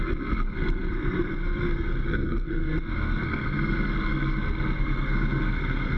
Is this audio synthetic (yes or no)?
yes